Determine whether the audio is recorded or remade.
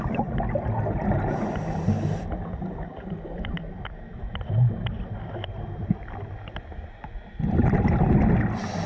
recorded